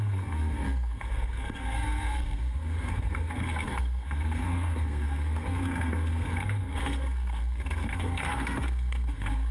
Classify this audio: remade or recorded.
remade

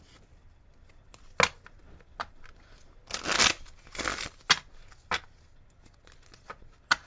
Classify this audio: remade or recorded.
recorded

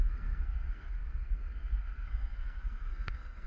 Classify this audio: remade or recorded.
remade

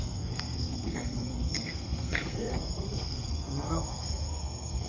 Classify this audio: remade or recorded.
remade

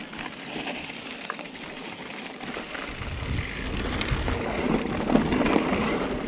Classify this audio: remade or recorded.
recorded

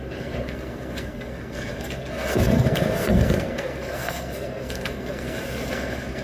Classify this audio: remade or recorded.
remade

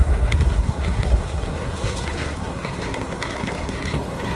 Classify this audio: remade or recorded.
remade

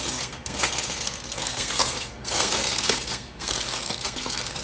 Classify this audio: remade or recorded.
remade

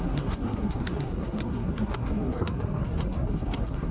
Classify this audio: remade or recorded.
remade